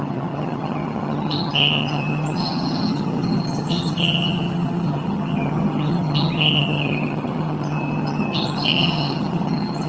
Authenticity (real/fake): fake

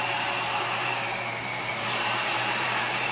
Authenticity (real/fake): fake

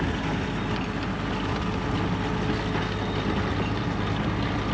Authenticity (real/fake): real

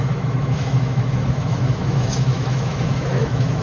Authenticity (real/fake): fake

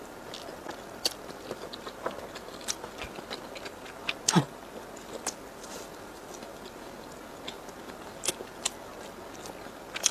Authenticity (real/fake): real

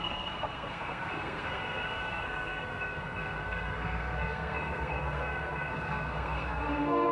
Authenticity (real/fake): fake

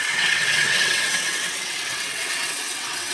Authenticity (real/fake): fake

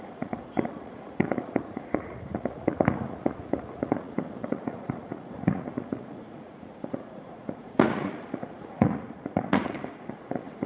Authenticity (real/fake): fake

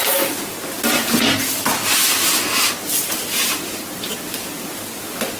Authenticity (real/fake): real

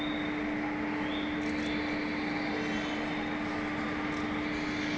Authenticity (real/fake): real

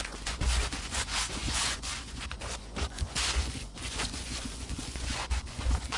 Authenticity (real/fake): fake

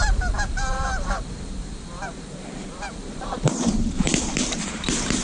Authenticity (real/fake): fake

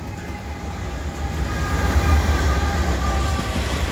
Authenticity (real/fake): real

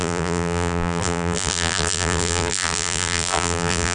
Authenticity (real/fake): fake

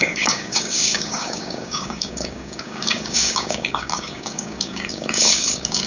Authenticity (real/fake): fake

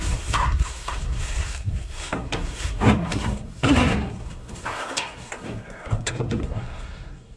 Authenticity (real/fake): fake